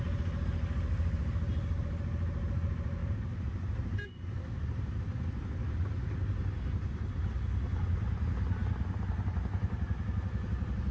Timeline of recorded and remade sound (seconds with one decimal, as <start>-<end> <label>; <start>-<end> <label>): 0.0-10.9 recorded